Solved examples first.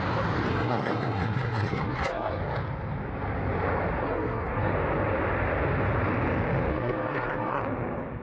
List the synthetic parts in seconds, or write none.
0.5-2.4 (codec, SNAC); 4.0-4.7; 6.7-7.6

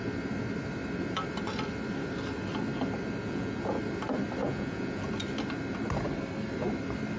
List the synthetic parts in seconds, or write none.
3.2-3.8 (vocoder, Vocos); 4.4-5.1